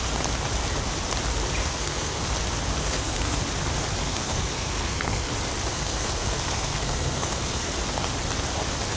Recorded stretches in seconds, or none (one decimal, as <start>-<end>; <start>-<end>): 0.0-1.6; 2.3-2.8; 3.4-4.0; 5.3-5.7; 7.7-9.0